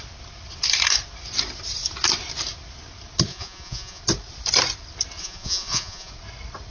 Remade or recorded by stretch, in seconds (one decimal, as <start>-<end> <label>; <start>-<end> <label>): 0.0-3.3 recorded; 3.3-4.0 remade; 4.0-5.2 recorded; 5.2-6.1 remade; 6.1-6.7 recorded